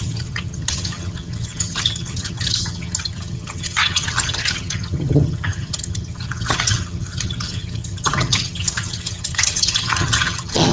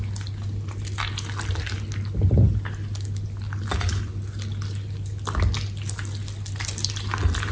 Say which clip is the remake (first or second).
first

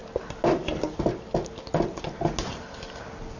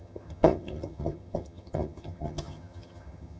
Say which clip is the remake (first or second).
second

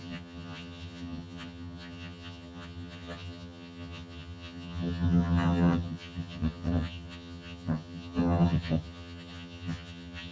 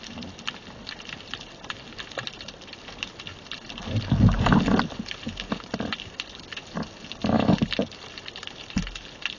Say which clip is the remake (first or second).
first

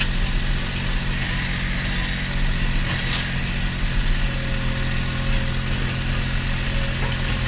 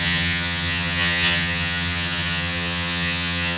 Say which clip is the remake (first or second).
second